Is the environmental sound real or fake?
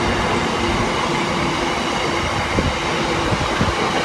real